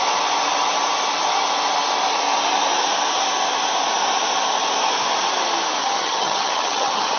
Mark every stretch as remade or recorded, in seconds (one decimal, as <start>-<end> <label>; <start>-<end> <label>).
0.0-5.8 recorded; 5.8-7.2 remade